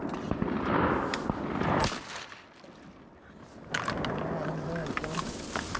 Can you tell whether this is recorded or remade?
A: recorded